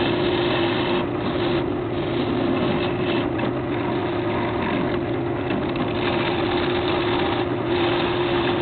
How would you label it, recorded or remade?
recorded